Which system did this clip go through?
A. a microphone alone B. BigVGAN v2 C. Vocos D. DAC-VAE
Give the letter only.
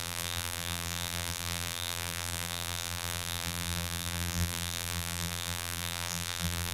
B